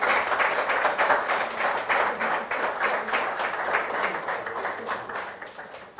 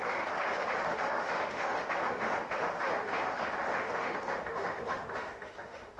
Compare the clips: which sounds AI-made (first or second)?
second